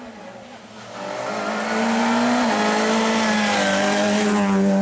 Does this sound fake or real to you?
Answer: real